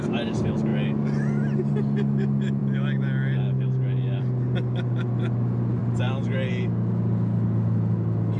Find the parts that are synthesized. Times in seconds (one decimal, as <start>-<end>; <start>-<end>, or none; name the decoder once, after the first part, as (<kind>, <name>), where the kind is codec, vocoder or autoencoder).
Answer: none